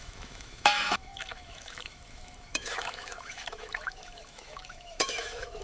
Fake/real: fake